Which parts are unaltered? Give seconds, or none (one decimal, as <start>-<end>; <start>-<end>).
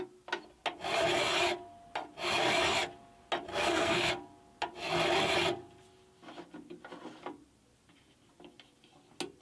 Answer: 0.0-3.5; 4.1-9.4